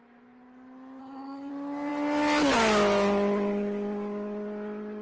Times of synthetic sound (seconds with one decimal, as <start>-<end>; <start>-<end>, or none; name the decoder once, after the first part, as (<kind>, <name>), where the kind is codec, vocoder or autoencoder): 1.0-1.5 (codec, SNAC)